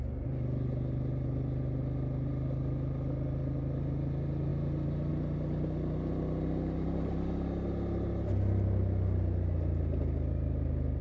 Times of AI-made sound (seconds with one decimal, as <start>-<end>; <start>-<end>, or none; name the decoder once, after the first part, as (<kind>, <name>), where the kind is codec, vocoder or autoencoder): none